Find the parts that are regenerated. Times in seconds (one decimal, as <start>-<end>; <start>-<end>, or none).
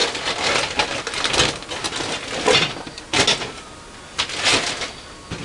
none